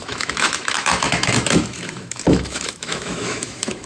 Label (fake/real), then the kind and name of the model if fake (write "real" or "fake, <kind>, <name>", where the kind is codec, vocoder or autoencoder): fake, autoencoder, DAC-VAE